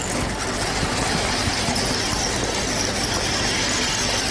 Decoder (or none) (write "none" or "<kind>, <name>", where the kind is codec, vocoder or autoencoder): none